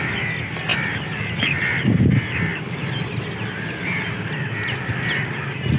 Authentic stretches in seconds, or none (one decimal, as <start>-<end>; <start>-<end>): 0.0-5.8